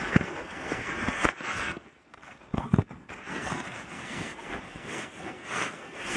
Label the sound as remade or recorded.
remade